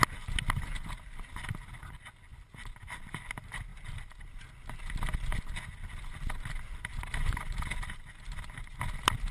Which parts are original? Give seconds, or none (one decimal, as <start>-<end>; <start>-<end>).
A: 0.0-9.3